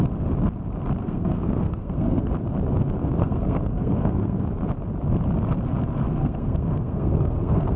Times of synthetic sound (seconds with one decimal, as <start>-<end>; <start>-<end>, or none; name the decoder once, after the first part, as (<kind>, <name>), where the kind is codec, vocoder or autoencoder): 1.0-2.3 (codec, SNAC); 3.2-4.5; 5.9-7.8